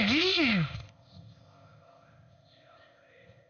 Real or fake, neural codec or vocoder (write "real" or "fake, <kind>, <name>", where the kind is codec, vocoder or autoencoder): fake, codec, ZipCodec